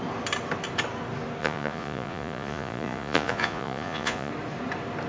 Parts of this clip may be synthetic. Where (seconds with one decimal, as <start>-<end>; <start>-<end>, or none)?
1.4-4.3